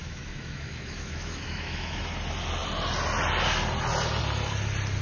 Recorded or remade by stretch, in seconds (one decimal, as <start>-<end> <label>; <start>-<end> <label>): 0.0-2.0 remade; 2.0-5.0 recorded